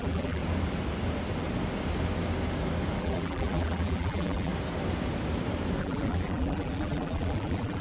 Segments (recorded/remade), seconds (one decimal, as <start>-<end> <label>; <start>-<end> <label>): 0.0-0.4 remade; 0.4-3.0 recorded; 3.0-4.5 remade; 4.5-5.8 recorded; 5.8-7.8 remade